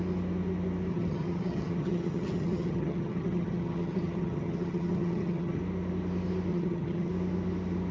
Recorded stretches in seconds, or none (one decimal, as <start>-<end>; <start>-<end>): 0.0-0.9; 5.6-6.5; 7.1-7.9